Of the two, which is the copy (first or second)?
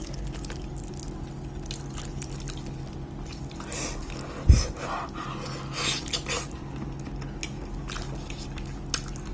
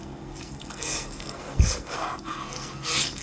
second